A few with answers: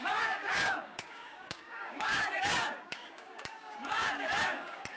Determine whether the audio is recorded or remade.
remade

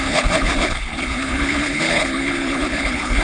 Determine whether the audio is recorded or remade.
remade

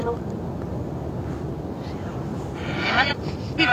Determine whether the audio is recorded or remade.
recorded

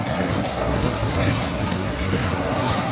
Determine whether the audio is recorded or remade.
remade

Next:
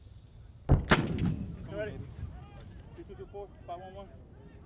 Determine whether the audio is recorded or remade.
recorded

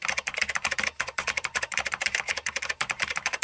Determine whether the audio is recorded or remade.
remade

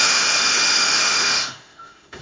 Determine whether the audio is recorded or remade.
remade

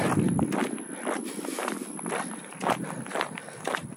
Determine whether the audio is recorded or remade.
recorded